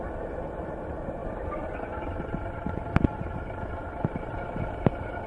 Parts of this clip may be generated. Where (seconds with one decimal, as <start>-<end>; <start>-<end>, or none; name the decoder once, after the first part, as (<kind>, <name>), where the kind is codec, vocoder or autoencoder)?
none